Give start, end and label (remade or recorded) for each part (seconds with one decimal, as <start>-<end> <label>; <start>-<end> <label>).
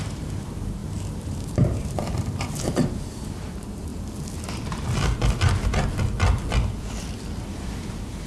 0.0-3.9 remade; 3.9-7.5 recorded; 7.5-8.3 remade